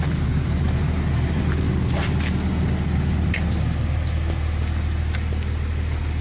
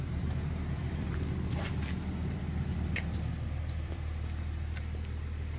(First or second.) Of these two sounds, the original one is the first